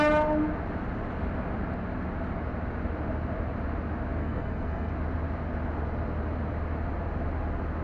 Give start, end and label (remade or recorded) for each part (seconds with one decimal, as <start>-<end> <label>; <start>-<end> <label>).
0.0-4.2 recorded; 4.2-4.9 remade; 4.9-7.8 recorded